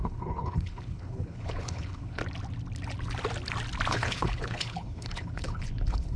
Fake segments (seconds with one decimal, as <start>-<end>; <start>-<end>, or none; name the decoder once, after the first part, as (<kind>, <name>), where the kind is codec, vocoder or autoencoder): 0.0-2.2 (codec, HILCodec); 3.9-6.2